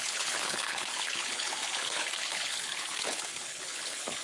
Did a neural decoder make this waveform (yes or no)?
yes